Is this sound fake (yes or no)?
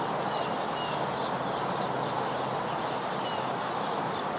no